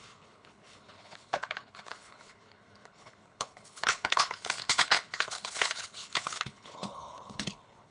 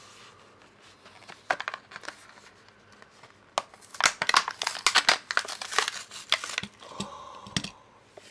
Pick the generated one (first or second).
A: first